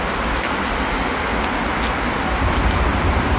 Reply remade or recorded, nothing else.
recorded